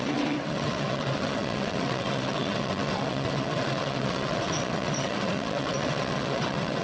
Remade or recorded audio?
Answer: remade